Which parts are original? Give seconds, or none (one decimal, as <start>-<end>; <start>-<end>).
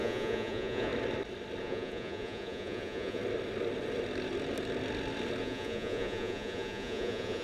0.9-1.6; 3.2-5.4